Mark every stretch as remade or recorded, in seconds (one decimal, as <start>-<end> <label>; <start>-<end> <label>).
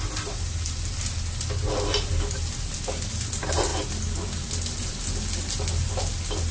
0.0-6.5 recorded